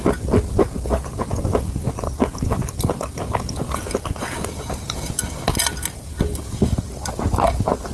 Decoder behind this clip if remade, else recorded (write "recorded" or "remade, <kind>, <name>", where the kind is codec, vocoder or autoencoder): recorded